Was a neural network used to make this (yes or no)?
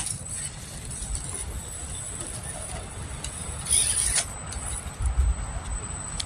no